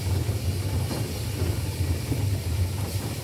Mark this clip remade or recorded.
recorded